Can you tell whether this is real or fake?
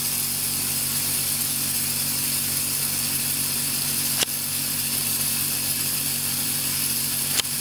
fake